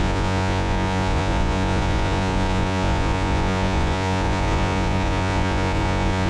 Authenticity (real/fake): fake